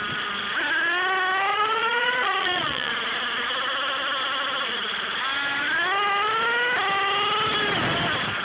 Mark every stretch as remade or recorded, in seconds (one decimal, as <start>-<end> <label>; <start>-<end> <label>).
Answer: 0.0-1.5 recorded; 1.5-2.9 remade; 2.9-8.4 recorded